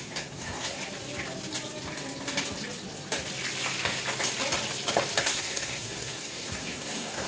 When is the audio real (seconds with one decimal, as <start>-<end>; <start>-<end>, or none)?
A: 0.8-5.2